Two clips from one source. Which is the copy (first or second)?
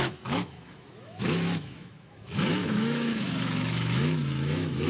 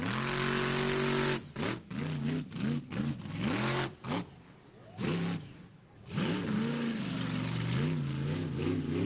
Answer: first